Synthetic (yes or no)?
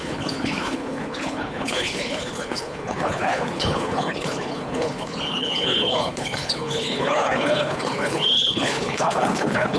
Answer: yes